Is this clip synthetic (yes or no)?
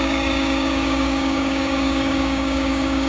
yes